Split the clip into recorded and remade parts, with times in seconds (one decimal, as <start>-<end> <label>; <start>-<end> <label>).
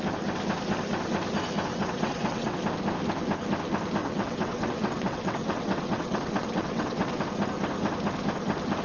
0.0-1.7 recorded; 1.7-2.6 remade; 2.6-4.0 recorded; 4.0-7.2 remade; 7.2-8.8 recorded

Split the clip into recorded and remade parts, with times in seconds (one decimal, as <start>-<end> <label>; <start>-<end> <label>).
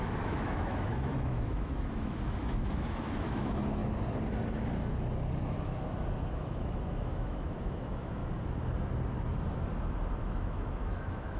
0.0-3.8 remade; 3.8-6.3 recorded; 6.3-8.2 remade; 8.2-10.2 recorded; 10.2-11.4 remade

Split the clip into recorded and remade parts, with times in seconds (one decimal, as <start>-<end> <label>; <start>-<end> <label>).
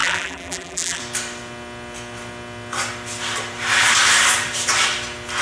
0.0-1.0 remade; 1.0-5.4 recorded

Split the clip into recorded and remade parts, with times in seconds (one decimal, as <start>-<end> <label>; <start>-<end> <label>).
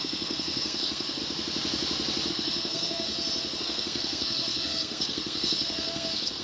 0.0-1.2 remade; 1.2-2.3 recorded; 2.3-3.1 remade; 3.1-3.6 recorded; 3.6-6.4 remade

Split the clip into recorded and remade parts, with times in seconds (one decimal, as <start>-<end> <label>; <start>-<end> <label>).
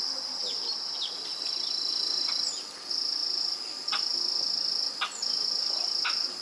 0.0-6.4 recorded